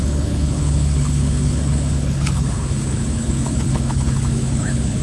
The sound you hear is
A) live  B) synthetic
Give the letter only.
B